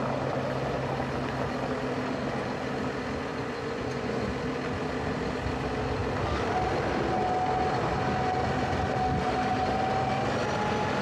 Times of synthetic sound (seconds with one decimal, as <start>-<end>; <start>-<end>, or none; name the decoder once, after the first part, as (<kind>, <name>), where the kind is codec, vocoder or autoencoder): 3.3-4.3 (vocoder, Vocos)